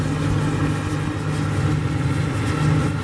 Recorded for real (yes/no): yes